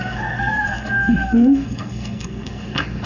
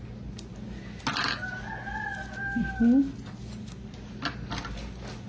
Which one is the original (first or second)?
second